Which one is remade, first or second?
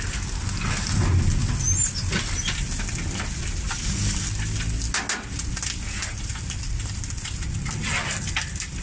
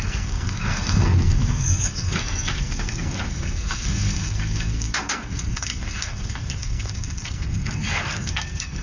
second